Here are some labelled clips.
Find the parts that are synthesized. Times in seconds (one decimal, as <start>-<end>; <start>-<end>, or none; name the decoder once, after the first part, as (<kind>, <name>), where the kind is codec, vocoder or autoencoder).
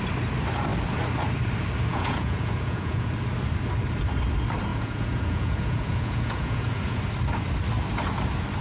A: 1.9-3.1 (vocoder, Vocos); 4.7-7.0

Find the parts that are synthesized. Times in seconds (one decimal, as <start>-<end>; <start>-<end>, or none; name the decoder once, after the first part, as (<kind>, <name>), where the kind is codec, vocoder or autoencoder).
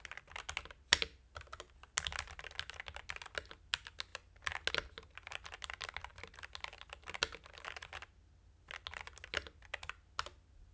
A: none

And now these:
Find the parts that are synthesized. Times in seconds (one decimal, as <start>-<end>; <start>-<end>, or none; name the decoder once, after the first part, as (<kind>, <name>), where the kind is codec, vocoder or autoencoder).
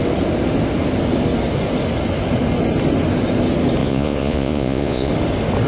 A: 3.8-5.1 (vocoder, Vocos)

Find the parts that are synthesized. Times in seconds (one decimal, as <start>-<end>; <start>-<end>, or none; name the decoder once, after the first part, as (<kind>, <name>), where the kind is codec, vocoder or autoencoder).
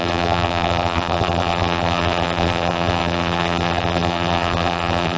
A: 0.0-5.2 (vocoder, BigVGAN v2)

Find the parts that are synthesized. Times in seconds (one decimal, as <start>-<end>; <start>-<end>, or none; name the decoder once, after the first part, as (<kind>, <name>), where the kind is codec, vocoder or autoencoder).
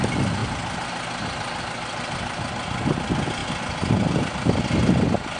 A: none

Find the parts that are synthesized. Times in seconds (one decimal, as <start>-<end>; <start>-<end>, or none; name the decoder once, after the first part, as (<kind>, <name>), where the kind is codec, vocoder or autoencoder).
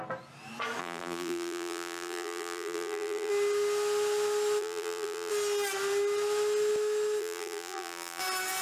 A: 0.8-3.3 (vocoder, BigVGAN v2); 4.6-5.3; 7.2-8.2